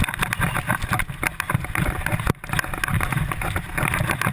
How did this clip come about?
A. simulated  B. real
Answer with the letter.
B